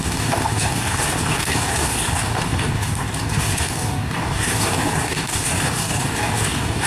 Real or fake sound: fake